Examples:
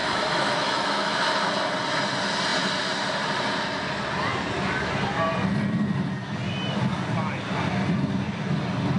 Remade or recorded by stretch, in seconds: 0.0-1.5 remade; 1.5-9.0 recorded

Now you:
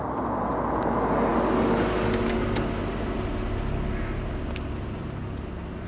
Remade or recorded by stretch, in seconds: 0.0-5.9 recorded

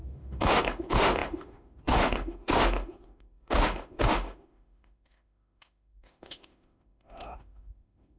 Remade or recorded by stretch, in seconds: 0.0-8.2 remade

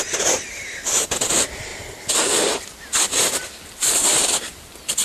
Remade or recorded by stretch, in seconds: 0.0-5.0 recorded